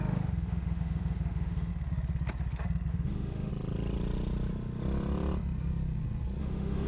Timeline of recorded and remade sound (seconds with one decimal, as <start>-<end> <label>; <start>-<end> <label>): 0.0-1.7 remade; 1.7-2.9 recorded; 2.9-3.5 remade; 3.5-6.4 recorded; 6.4-6.9 remade